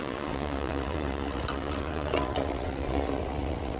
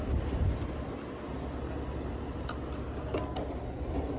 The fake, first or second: first